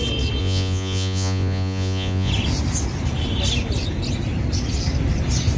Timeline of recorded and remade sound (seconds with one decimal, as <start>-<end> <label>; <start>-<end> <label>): 0.0-0.4 recorded; 0.4-2.3 remade; 2.3-5.6 recorded